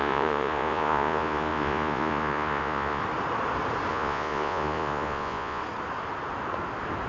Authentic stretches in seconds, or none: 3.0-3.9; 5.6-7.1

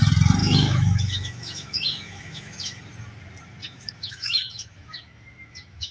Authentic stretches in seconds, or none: 0.0-0.4; 2.8-3.6

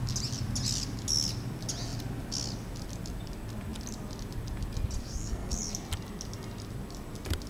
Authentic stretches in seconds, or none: 0.0-5.0; 5.6-7.5

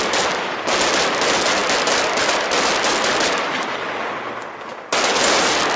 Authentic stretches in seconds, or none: 0.0-5.8

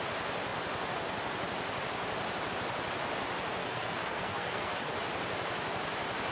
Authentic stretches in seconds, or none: 0.0-3.6; 4.9-6.3